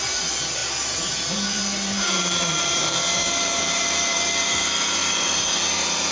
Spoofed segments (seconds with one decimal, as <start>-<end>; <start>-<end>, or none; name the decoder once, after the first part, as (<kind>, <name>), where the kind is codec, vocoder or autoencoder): 0.0-6.1 (vocoder, BigVGAN v2)